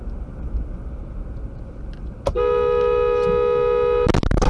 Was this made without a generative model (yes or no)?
yes